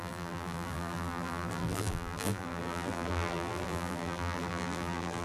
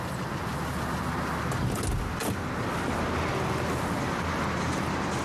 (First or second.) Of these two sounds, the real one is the second